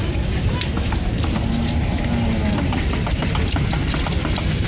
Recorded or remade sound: recorded